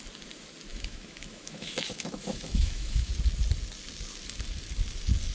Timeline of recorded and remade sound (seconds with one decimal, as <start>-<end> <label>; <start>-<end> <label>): 0.0-0.7 recorded; 0.7-3.1 remade; 3.1-5.3 recorded